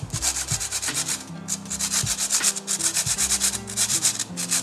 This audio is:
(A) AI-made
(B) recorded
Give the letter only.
B